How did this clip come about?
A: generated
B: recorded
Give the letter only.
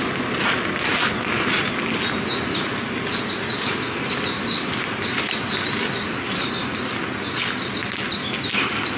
B